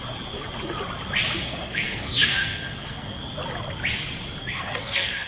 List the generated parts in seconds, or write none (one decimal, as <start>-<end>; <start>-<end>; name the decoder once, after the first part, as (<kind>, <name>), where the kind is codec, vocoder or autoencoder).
1.4-3.2 (codec, SNAC); 4.4-5.3